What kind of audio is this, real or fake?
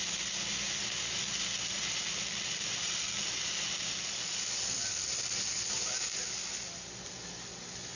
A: real